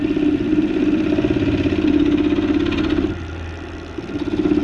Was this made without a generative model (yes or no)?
yes